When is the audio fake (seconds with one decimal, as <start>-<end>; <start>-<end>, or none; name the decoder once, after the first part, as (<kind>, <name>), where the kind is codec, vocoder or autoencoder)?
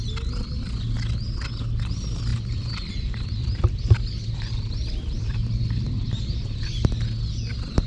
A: 2.3-6.7 (vocoder, BigVGAN v2)